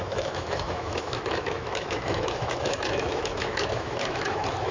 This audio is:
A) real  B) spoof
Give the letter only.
B